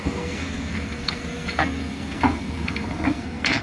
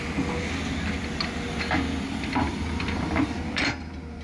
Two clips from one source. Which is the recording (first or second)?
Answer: second